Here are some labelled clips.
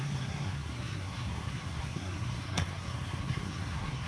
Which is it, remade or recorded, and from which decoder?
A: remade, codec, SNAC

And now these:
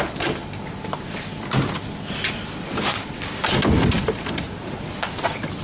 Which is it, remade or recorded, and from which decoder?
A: recorded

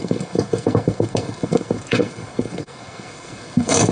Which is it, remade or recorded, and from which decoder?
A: remade, codec, SNAC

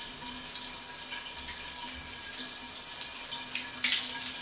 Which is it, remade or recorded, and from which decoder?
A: recorded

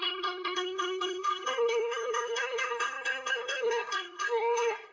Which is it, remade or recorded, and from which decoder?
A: remade, codec, SNAC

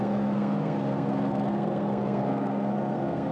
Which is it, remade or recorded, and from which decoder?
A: remade, codec, SNAC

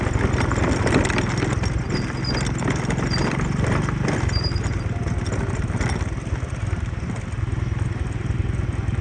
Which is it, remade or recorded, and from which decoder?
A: recorded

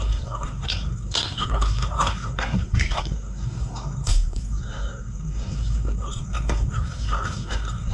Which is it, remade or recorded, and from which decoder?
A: remade, codec, SNAC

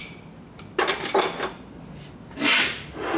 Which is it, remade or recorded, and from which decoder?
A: recorded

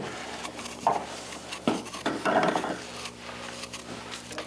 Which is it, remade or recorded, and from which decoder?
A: recorded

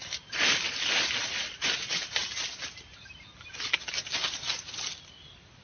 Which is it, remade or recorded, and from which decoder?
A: recorded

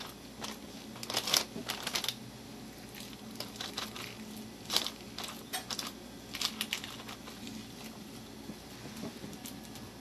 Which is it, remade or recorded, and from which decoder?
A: recorded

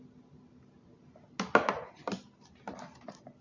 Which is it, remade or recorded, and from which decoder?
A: recorded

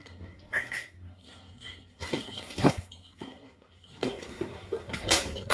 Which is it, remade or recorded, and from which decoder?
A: remade, codec, SNAC